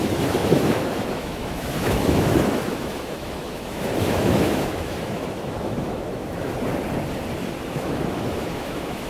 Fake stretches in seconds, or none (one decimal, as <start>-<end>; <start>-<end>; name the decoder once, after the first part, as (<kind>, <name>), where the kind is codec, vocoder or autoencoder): 0.0-6.5 (autoencoder, DAC-VAE); 7.7-9.1